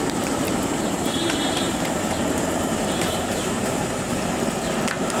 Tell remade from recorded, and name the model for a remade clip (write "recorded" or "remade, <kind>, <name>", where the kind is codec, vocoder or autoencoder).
remade, vocoder, BigVGAN v2